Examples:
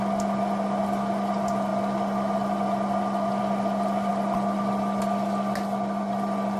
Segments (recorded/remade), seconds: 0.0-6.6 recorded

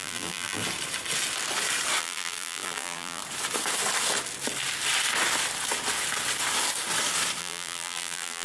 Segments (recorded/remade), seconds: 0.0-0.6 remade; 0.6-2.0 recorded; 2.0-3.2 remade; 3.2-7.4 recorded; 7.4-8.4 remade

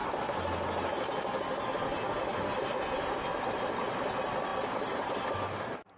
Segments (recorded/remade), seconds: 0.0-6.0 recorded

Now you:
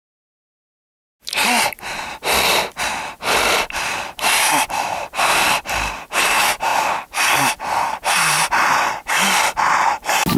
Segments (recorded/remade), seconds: 0.0-2.5 recorded; 2.5-6.3 remade; 6.3-6.7 recorded; 6.7-7.5 remade; 7.5-10.4 recorded

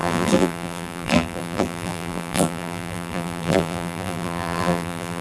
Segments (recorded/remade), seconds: 0.0-5.2 remade

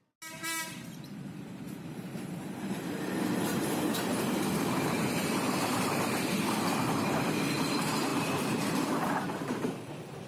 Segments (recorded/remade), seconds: 0.0-0.7 recorded; 0.7-4.3 remade; 4.3-10.3 recorded

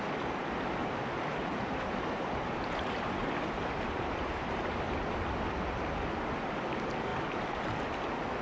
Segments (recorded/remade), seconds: 0.0-0.8 recorded; 0.8-5.0 remade; 5.0-8.4 recorded